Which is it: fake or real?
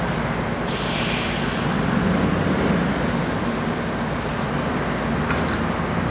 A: real